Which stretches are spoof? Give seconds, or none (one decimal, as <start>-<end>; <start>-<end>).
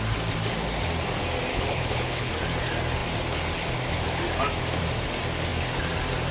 1.5-2.3